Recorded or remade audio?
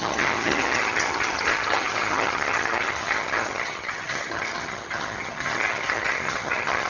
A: remade